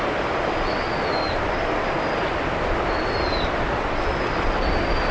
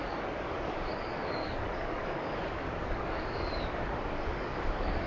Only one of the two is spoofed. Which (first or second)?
second